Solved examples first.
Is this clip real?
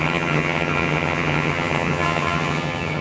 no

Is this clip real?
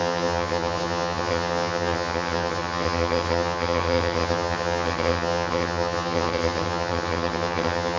no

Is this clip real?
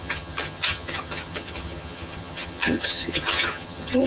no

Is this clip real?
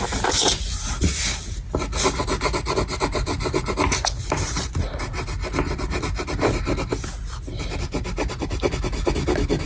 yes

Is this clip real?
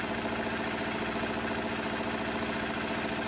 yes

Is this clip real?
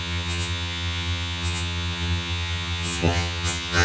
no